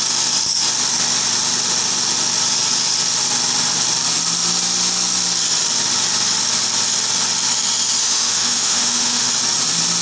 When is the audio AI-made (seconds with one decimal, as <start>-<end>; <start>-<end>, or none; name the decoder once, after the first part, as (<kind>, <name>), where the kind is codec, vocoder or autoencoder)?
8.0-9.3 (autoencoder, DAC-VAE)